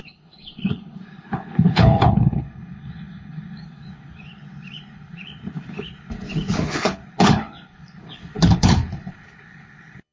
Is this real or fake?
fake